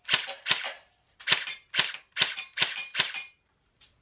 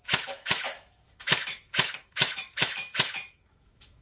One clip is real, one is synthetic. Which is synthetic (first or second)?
second